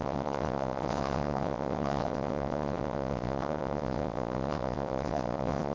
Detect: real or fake fake